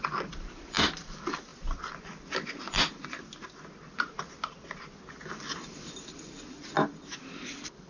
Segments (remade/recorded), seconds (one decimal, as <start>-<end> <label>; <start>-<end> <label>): 0.0-1.5 remade; 1.5-5.1 recorded; 5.1-7.9 remade